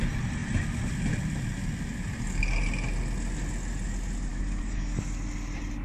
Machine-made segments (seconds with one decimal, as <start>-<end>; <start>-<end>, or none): 4.3-5.0